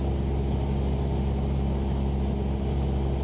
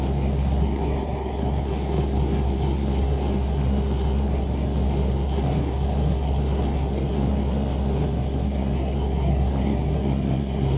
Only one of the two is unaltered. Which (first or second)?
first